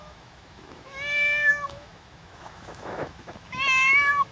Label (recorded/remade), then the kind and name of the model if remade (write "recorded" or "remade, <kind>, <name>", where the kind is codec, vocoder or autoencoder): remade, autoencoder, DAC-VAE